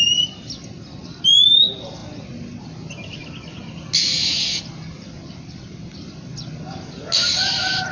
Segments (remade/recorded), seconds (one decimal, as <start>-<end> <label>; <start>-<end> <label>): 0.0-7.9 recorded